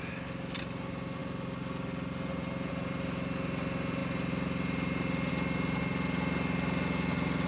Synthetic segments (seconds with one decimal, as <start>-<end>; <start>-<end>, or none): none